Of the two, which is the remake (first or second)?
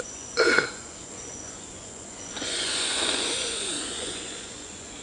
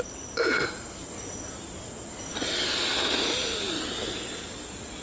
first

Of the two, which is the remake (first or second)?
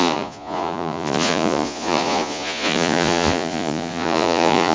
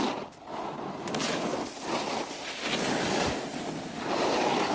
first